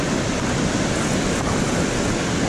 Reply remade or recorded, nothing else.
recorded